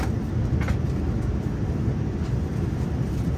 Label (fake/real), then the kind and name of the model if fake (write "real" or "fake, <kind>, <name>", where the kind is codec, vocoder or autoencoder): fake, vocoder, BigVGAN v2